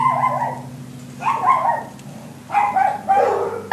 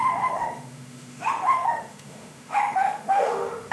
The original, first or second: first